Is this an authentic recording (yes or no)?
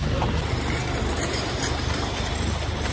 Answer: yes